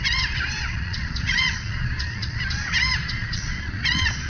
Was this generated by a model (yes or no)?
yes